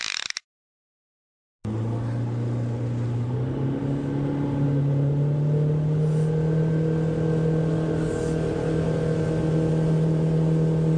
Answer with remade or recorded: recorded